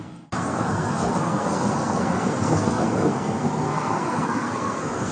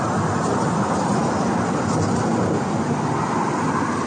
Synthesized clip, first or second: first